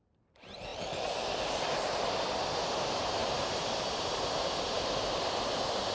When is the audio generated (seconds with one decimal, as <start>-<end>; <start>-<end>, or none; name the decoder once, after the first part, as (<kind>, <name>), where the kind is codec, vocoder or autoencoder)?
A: none